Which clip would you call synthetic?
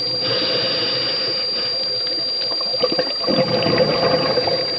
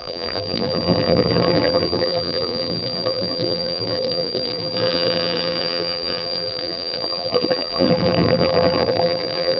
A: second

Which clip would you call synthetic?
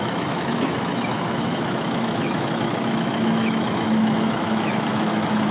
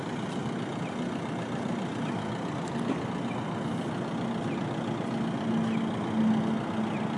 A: first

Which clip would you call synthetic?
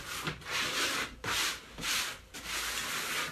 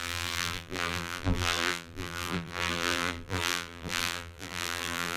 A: second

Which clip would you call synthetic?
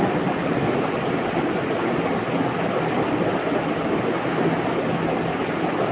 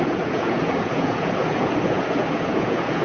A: second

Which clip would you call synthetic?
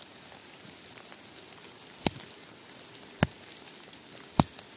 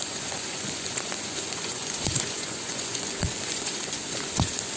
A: second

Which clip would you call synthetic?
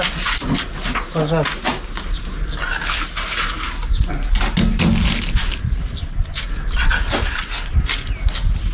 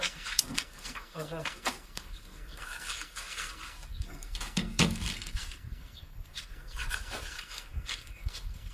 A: second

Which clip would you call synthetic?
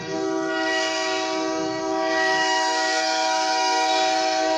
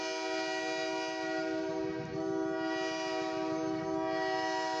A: first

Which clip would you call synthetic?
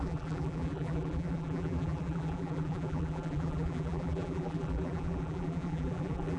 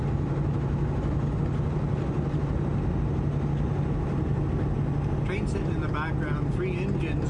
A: first